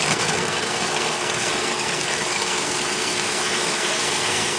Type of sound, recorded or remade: remade